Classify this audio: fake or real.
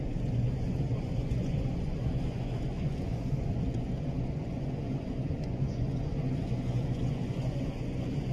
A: fake